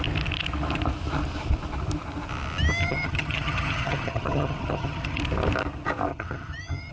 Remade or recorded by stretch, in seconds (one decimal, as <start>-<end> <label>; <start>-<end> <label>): 0.0-2.8 recorded; 2.8-5.2 remade; 5.2-6.1 recorded; 6.1-6.9 remade